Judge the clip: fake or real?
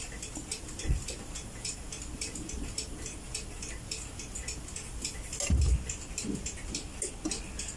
real